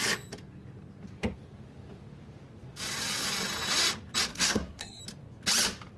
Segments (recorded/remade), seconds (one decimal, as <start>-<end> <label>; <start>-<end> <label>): 0.0-4.3 recorded; 4.3-5.0 remade; 5.0-6.0 recorded